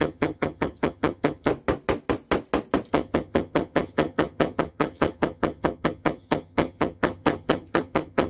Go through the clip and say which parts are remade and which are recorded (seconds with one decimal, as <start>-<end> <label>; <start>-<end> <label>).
0.0-1.5 remade; 1.5-2.9 recorded; 2.9-8.3 remade